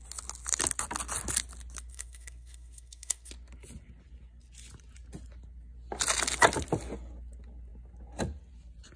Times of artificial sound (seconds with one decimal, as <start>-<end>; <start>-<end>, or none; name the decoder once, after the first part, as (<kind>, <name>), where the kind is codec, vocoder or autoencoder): 1.9-3.3 (codec, SNAC)